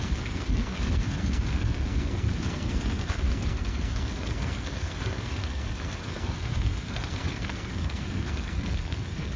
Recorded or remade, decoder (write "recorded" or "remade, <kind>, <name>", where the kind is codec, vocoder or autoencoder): remade, codec, SNAC